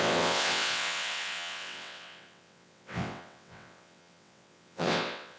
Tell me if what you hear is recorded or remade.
remade